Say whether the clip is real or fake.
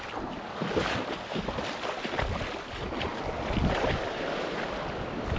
real